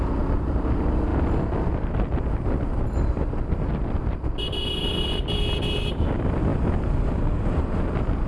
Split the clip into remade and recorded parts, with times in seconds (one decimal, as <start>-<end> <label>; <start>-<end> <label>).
0.0-8.3 recorded